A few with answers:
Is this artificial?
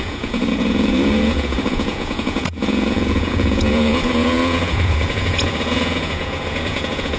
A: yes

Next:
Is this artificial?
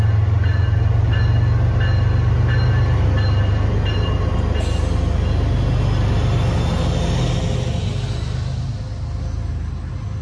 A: no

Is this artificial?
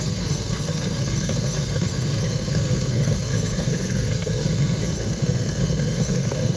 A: yes